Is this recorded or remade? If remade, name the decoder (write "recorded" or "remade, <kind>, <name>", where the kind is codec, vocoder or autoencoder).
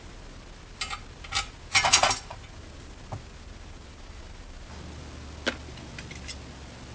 recorded